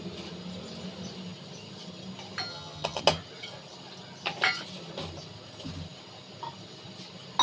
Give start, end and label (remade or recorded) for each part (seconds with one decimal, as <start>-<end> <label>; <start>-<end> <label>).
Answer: 0.0-2.5 recorded; 2.5-3.0 remade; 3.0-7.4 recorded